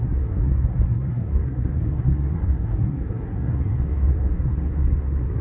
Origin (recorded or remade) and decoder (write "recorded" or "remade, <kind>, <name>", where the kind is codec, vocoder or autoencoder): remade, codec, SNAC